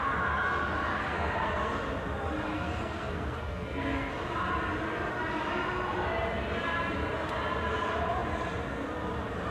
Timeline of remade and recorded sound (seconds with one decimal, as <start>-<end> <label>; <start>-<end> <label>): 0.0-0.9 recorded; 0.9-1.7 remade; 1.7-2.5 recorded; 2.5-4.1 remade; 4.1-9.5 recorded